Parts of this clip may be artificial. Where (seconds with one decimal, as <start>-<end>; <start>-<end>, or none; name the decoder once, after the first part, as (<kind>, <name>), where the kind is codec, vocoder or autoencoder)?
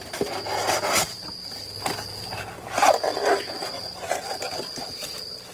none